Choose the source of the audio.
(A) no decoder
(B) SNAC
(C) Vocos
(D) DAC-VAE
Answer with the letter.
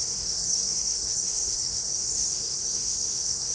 B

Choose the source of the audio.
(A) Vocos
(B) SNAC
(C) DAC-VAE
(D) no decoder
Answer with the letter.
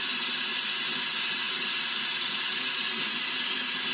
D